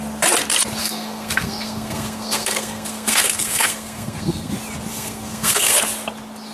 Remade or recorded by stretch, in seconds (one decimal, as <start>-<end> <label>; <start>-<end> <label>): 0.0-0.8 recorded; 0.8-4.5 remade; 4.5-4.9 recorded; 4.9-5.8 remade; 5.8-6.5 recorded